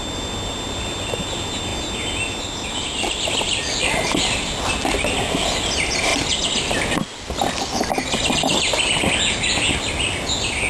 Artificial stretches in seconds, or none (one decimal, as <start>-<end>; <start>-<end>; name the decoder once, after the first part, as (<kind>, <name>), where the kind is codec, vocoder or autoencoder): none